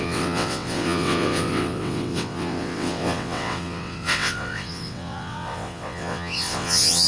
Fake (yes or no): yes